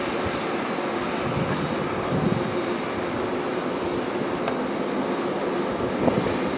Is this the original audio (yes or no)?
yes